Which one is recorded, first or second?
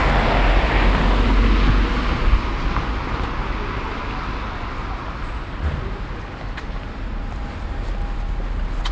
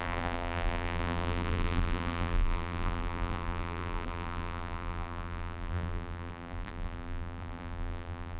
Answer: first